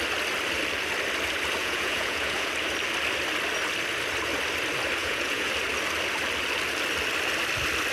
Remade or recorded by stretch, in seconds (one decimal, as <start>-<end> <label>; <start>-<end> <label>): 0.0-1.6 recorded; 1.6-2.5 remade; 2.5-5.0 recorded; 5.0-5.5 remade; 5.5-7.9 recorded